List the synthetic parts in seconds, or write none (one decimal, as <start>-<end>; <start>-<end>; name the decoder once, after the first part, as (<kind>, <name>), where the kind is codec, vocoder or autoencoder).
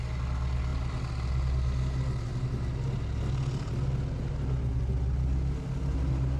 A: none